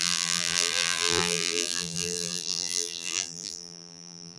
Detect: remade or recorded remade